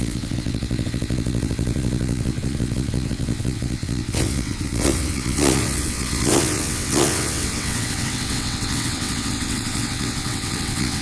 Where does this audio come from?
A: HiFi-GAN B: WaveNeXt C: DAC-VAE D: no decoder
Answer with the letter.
B